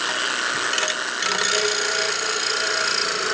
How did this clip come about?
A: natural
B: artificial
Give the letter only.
A